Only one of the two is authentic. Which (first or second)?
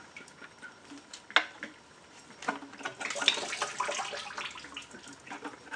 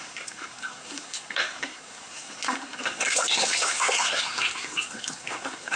first